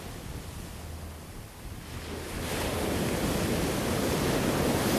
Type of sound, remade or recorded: recorded